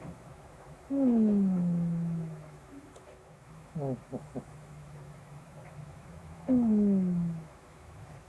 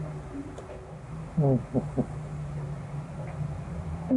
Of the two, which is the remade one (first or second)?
first